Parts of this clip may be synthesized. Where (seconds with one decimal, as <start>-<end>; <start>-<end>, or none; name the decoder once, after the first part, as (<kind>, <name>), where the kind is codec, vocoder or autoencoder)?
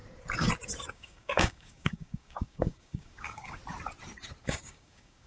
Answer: 0.9-3.6 (codec, DAC); 4.4-5.3